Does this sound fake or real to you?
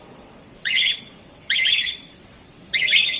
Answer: fake